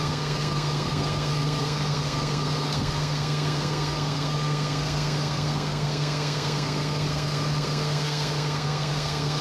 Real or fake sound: fake